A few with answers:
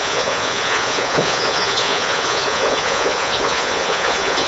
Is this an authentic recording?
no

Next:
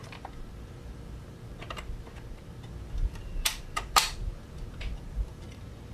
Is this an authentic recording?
no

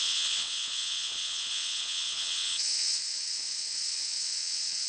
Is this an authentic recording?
no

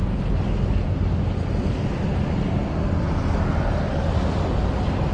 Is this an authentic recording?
yes